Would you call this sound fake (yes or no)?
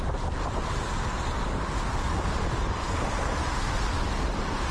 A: no